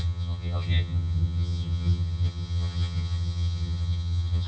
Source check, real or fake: fake